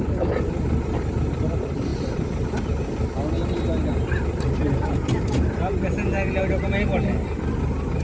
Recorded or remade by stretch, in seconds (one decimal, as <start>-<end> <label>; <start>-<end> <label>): 0.0-8.0 recorded